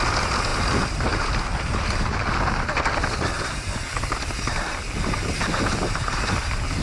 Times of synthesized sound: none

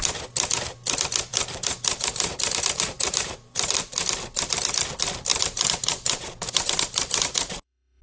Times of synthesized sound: 1.3-3.8 (vocoder, BigVGAN v2); 5.3-8.0